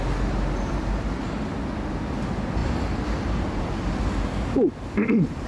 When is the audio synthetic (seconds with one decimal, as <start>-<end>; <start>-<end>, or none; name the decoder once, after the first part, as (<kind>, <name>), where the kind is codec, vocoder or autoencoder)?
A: none